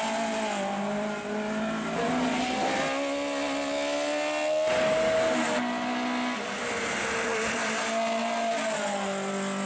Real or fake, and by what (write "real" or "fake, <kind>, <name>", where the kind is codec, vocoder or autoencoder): real